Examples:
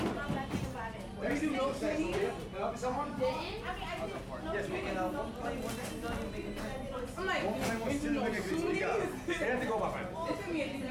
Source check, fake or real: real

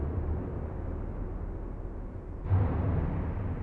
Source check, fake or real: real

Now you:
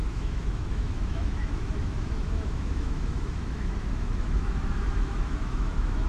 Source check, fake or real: fake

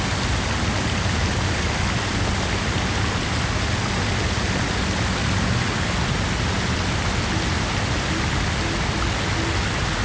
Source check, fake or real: real